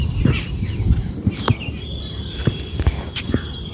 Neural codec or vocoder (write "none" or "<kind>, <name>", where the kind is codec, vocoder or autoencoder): vocoder, BigVGAN v2